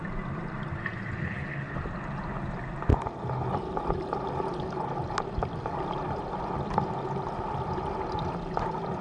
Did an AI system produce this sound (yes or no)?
no